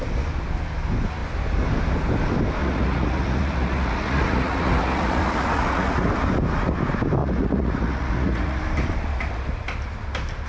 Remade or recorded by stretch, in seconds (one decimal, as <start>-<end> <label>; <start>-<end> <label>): 0.0-2.6 recorded; 2.6-6.1 remade; 6.1-7.2 recorded; 7.2-8.6 remade; 8.6-10.5 recorded